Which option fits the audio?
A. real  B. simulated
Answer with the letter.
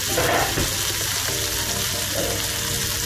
A